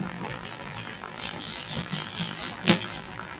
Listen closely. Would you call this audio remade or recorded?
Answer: remade